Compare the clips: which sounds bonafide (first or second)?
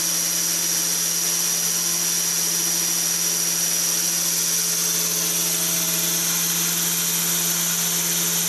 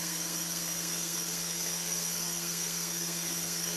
first